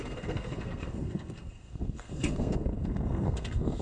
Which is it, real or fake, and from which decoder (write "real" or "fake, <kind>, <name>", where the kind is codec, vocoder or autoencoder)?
fake, codec, SNAC